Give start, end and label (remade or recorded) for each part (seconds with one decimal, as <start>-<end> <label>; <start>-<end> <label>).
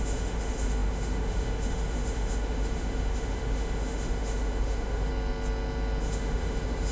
0.0-5.1 remade; 5.1-6.0 recorded; 6.0-6.9 remade